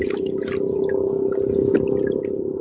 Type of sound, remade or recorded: recorded